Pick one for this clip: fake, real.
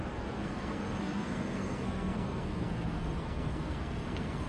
fake